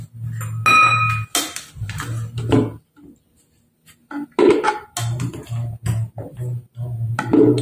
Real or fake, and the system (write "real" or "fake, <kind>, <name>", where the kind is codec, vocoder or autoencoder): real